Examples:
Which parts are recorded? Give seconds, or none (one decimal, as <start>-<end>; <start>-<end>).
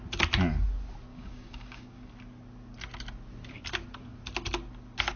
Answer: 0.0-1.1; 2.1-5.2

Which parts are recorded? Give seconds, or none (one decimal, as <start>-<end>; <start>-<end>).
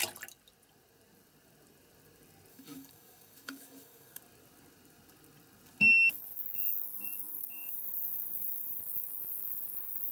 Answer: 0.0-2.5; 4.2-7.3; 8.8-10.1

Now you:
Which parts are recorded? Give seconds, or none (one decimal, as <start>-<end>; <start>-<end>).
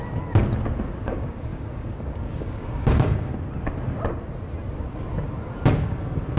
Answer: 0.0-0.8; 3.3-5.8